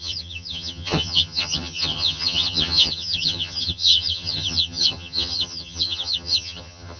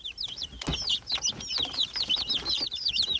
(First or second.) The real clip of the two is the second